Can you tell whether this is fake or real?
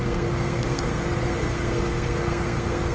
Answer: fake